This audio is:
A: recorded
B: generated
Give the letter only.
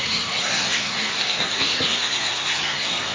B